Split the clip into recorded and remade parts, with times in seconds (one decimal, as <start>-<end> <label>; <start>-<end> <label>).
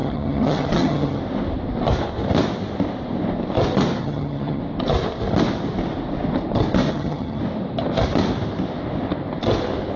0.0-1.2 remade; 1.2-4.0 recorded; 4.0-4.6 remade; 4.6-6.9 recorded; 6.9-7.4 remade; 7.4-10.0 recorded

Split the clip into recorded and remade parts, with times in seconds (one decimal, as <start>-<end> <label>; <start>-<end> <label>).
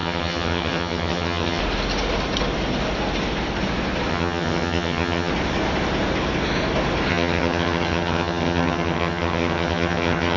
0.0-1.6 remade; 1.6-4.1 recorded; 4.1-5.3 remade; 5.3-7.1 recorded; 7.1-10.4 remade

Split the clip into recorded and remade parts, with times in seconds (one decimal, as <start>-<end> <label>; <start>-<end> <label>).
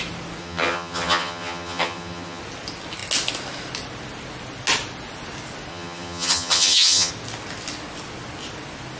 0.0-0.4 recorded; 0.4-2.4 remade; 2.4-5.7 recorded; 5.7-7.1 remade; 7.1-9.0 recorded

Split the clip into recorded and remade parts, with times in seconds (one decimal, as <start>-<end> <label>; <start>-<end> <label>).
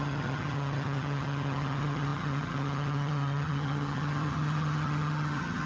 0.0-5.7 remade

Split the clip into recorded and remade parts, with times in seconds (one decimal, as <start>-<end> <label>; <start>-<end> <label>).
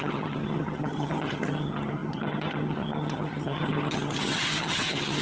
0.0-5.2 remade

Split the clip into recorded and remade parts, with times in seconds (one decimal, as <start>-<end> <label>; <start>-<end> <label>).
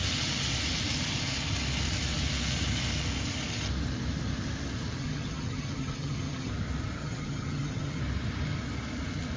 0.0-5.0 recorded; 5.0-6.5 remade; 6.5-7.0 recorded; 7.0-8.0 remade; 8.0-9.4 recorded